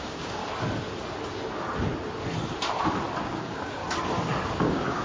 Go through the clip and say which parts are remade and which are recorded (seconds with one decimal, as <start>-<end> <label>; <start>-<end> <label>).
0.0-0.4 remade; 0.4-3.2 recorded; 3.2-3.8 remade; 3.8-4.6 recorded; 4.6-5.0 remade